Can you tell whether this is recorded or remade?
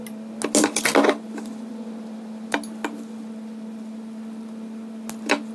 recorded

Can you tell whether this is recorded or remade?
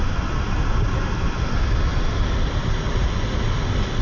recorded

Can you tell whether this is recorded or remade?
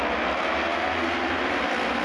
recorded